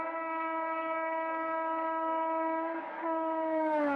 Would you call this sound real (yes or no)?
no